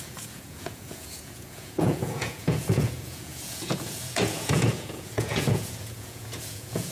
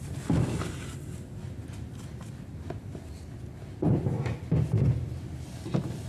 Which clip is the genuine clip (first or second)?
second